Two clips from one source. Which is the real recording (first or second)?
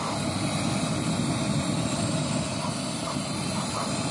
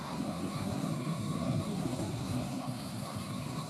first